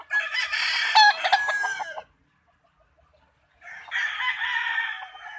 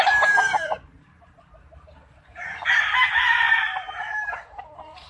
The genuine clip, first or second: first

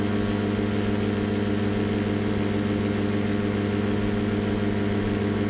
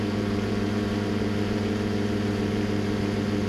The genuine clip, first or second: first